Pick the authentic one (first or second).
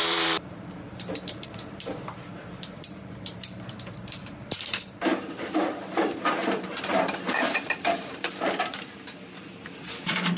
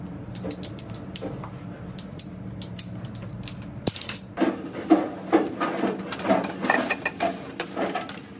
second